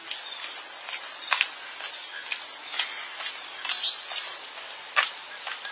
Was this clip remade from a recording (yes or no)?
no